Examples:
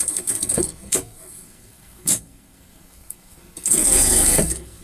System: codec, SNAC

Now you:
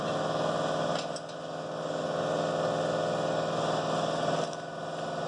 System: none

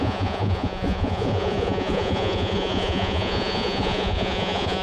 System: vocoder, Vocos